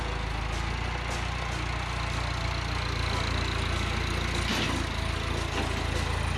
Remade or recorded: recorded